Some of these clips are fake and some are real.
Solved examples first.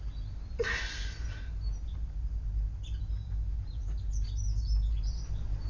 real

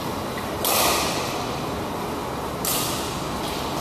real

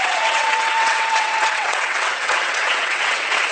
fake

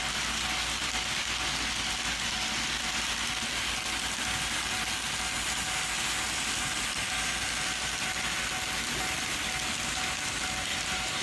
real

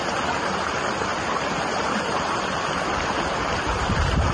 fake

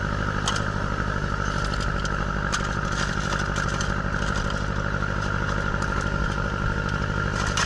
real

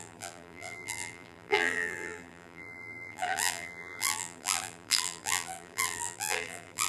fake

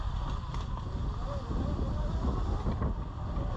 real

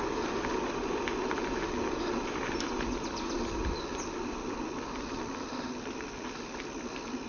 real